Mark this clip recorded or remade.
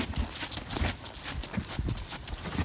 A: recorded